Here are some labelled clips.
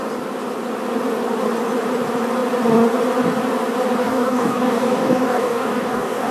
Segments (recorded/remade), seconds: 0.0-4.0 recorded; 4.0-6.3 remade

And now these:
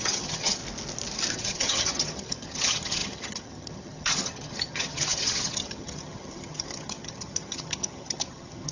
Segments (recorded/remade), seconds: 0.0-0.6 remade; 0.6-1.3 recorded; 1.3-8.7 remade

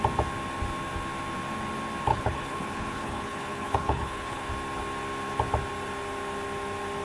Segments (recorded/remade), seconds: 0.0-2.1 recorded; 2.1-4.5 remade; 4.5-7.0 recorded

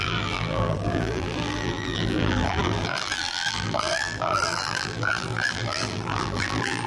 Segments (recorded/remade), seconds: 0.0-6.9 remade

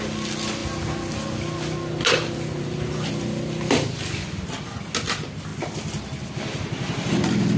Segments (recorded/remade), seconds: 0.0-7.6 recorded